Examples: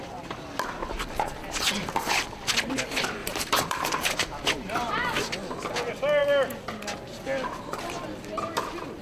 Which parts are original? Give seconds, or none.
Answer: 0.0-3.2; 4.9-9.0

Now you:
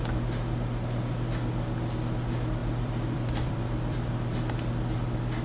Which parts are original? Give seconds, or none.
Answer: 0.0-2.6; 4.7-5.4

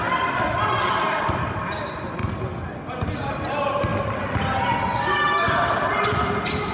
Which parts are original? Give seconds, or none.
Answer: 2.2-2.8; 3.9-5.6

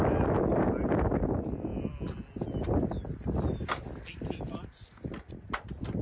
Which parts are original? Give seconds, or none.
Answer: 0.0-6.0

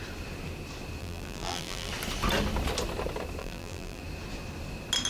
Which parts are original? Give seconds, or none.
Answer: 0.0-1.0; 1.9-3.4; 4.0-5.1

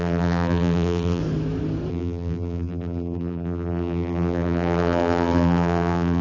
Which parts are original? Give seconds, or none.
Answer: 1.2-1.9

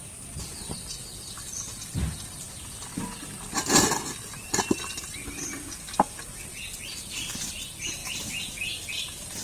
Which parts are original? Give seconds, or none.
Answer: 0.0-8.0; 8.9-9.4

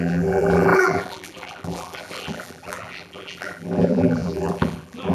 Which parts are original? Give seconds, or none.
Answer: none